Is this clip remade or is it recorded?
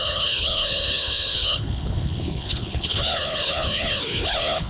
remade